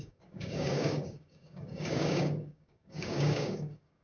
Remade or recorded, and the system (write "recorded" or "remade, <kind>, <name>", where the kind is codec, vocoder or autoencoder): remade, codec, DAC